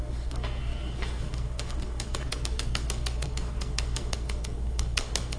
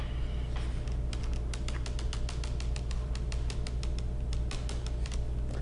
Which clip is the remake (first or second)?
first